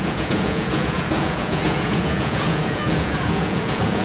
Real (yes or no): no